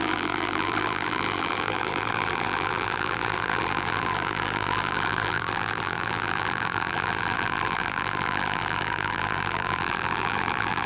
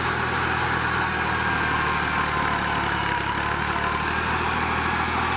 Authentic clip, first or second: second